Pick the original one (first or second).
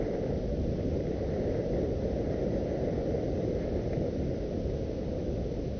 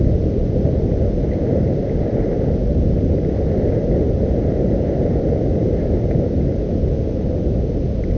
second